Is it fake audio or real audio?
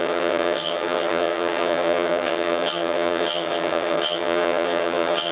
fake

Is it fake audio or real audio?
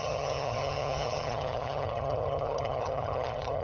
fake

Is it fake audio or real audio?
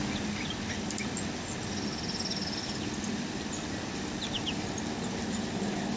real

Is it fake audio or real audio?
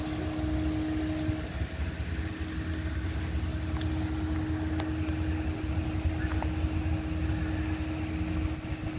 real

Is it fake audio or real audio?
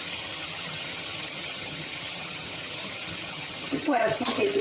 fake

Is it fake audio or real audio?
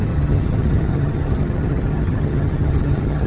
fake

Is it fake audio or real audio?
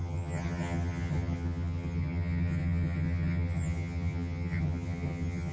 fake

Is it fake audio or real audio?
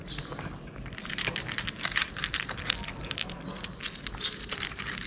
real